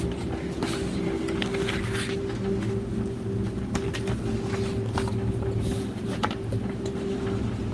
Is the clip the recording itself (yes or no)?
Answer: yes